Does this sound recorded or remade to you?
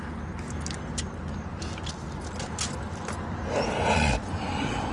recorded